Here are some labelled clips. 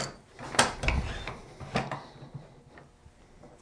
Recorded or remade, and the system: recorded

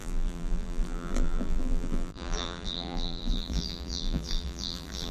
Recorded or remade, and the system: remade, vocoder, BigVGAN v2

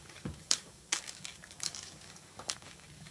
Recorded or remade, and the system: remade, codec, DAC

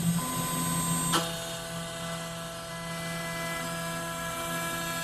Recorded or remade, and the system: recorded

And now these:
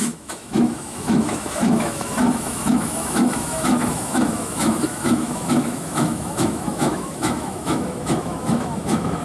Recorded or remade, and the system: remade, autoencoder, DAC-VAE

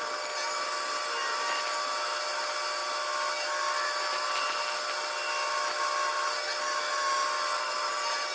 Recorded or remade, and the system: recorded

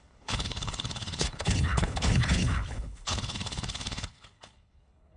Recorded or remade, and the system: remade, codec, HILCodec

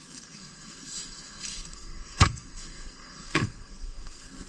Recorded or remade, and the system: remade, codec, SNAC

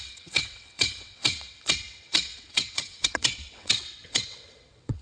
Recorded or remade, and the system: remade, vocoder, WaveNeXt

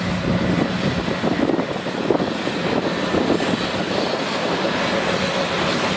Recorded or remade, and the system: recorded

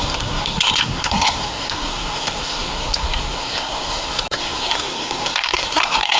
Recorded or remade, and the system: remade, codec, SNAC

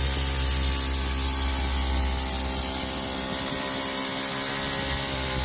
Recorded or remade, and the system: recorded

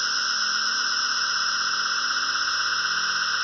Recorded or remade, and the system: recorded